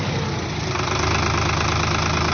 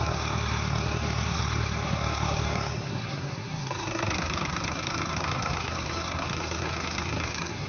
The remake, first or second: second